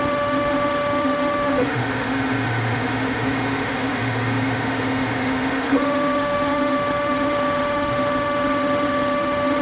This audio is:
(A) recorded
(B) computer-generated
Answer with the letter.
B